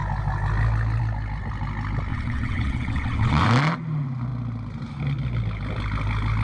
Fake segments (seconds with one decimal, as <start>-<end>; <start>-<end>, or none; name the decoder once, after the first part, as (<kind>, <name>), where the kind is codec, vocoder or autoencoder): 2.1-3.4 (vocoder, WaveNeXt)